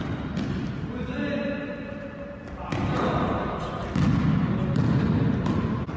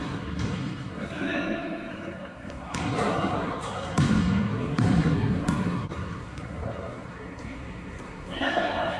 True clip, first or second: first